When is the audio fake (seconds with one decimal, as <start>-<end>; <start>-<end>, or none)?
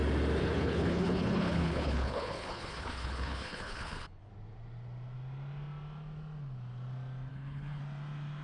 0.4-4.3; 7.3-7.8